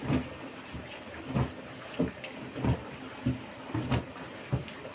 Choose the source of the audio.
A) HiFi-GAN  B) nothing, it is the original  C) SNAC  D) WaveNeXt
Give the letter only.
B